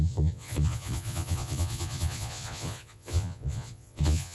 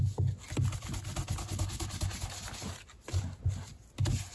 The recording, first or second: second